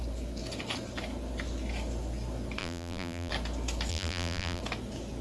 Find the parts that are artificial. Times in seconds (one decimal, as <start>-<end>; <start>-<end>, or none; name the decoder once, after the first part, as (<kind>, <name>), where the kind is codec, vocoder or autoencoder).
2.6-3.3 (vocoder, BigVGAN v2); 3.9-4.6